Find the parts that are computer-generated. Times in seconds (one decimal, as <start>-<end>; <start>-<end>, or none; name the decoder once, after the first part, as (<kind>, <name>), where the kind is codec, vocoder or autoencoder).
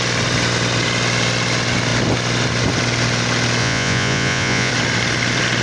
3.6-4.7 (vocoder, Vocos)